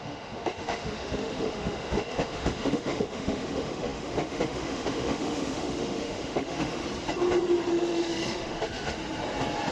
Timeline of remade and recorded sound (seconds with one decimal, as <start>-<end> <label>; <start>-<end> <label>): 0.0-6.8 remade; 6.8-7.7 recorded; 7.7-9.0 remade; 9.0-9.7 recorded